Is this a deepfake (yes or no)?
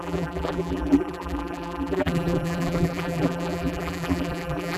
yes